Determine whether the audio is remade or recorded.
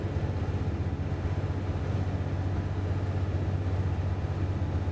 recorded